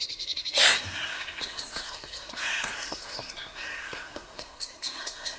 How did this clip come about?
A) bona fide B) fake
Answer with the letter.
B